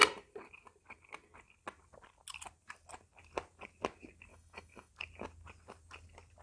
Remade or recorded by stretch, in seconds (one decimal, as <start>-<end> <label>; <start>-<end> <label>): 0.0-4.3 recorded; 4.3-4.9 remade; 4.9-6.4 recorded